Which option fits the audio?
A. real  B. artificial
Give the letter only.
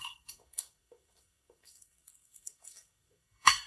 B